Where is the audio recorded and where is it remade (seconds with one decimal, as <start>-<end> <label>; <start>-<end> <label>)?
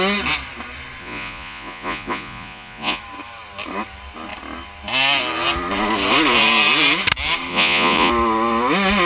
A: 0.0-1.0 recorded; 1.0-3.0 remade; 3.0-7.5 recorded; 7.5-8.1 remade; 8.1-9.1 recorded